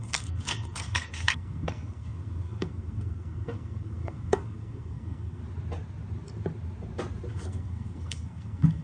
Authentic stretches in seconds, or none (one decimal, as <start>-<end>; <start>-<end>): 5.4-7.3